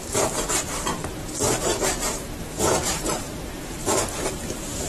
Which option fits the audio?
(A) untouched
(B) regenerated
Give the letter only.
B